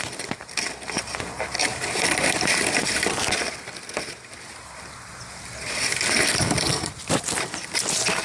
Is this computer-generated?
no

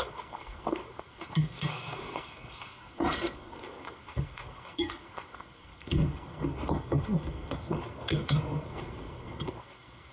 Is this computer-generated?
yes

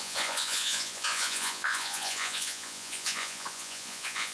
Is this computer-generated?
yes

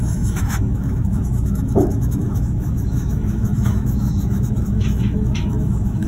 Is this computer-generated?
yes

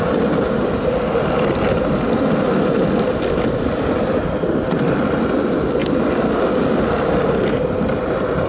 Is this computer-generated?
no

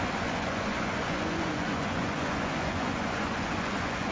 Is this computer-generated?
yes